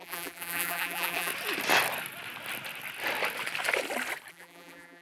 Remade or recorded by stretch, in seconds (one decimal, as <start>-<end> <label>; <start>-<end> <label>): 0.0-1.3 remade; 1.3-4.3 recorded; 4.3-5.0 remade